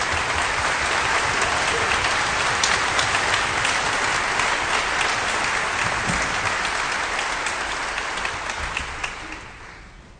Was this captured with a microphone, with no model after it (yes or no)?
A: yes